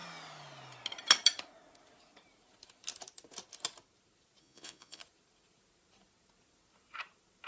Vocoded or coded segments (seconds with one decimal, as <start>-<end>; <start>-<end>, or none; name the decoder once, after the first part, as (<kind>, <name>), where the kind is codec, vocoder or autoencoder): 4.4-5.0 (vocoder, Vocos)